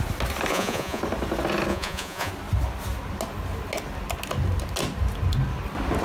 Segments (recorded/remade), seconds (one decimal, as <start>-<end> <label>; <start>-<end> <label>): 0.0-0.5 recorded; 0.5-1.0 remade; 1.0-1.7 recorded; 1.7-2.3 remade; 2.3-6.0 recorded